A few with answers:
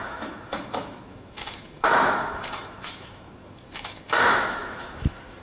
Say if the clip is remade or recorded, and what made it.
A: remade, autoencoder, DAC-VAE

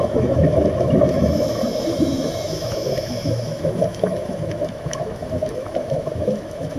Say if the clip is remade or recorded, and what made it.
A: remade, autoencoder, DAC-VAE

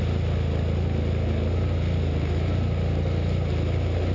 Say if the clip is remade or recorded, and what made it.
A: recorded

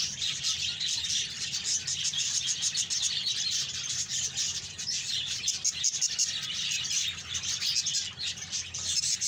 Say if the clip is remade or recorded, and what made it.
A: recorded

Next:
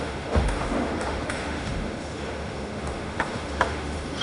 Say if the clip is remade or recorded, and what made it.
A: remade, autoencoder, DAC-VAE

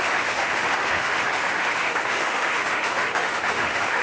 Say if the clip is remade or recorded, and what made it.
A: remade, autoencoder, DAC-VAE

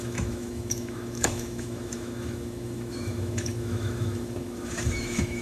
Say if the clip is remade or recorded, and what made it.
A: remade, autoencoder, DAC-VAE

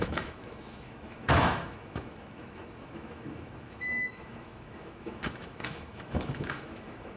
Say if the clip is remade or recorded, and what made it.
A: remade, autoencoder, DAC-VAE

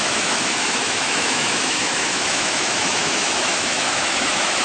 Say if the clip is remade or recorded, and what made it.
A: remade, autoencoder, DAC-VAE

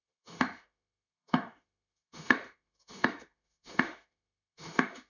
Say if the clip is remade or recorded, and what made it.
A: remade, autoencoder, DAC-VAE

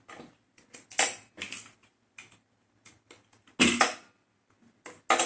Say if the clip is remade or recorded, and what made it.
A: recorded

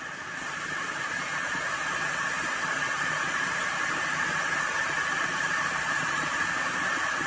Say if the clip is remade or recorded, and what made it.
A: recorded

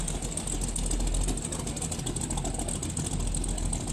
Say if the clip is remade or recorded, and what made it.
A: recorded